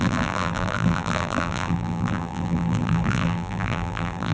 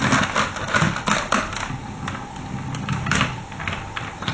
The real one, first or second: second